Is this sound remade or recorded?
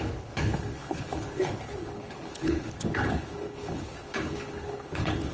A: remade